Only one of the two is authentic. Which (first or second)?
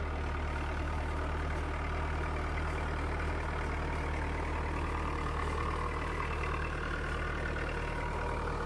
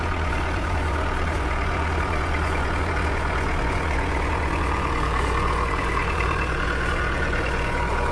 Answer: first